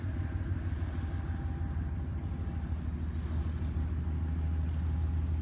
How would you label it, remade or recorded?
recorded